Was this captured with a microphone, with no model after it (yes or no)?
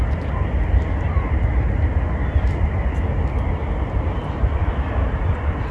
yes